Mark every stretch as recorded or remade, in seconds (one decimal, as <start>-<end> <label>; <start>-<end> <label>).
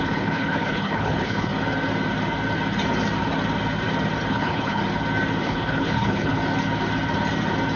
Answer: 0.0-1.5 remade; 1.5-4.3 recorded; 4.3-4.8 remade; 4.8-5.4 recorded; 5.4-6.4 remade; 6.4-7.8 recorded